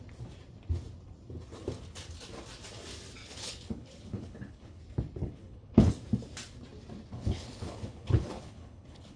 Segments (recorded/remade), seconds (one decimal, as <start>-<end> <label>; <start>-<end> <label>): 0.0-3.2 recorded; 3.2-4.8 remade; 4.8-5.2 recorded; 5.2-5.9 remade; 5.9-7.1 recorded; 7.1-9.2 remade